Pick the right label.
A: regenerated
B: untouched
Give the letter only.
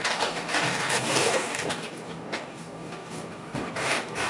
A